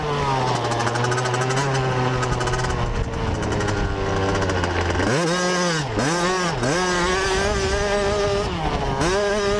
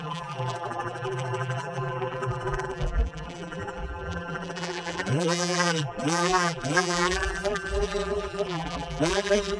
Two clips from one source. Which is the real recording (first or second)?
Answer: first